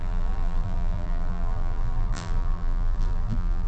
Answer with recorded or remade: remade